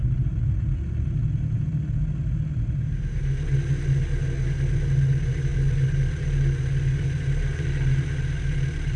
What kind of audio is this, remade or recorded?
recorded